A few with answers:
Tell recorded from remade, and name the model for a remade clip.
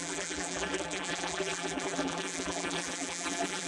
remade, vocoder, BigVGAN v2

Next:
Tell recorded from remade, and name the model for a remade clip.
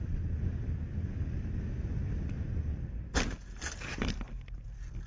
remade, vocoder, BigVGAN v2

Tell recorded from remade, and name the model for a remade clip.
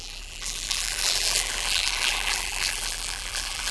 remade, vocoder, BigVGAN v2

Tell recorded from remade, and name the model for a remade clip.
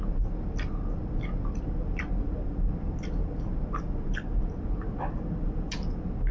recorded